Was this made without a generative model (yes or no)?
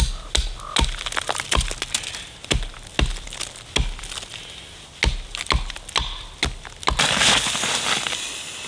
yes